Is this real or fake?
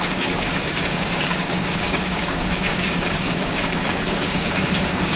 fake